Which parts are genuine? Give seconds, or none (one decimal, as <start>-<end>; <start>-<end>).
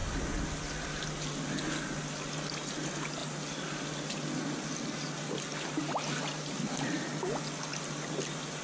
0.0-8.6